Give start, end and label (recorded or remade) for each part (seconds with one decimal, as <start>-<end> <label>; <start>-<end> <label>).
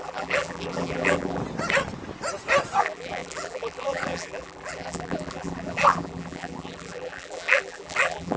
0.0-1.4 remade; 1.4-2.8 recorded; 2.8-8.4 remade